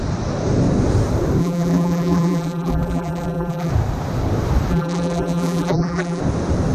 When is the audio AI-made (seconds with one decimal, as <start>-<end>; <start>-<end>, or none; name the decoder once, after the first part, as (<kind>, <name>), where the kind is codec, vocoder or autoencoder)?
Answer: 1.4-3.7 (vocoder, BigVGAN v2); 4.7-6.2